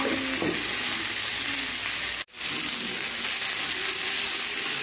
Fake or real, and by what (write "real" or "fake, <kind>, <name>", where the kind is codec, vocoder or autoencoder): real